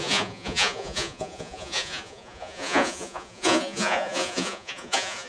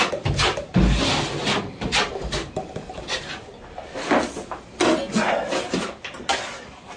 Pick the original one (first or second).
second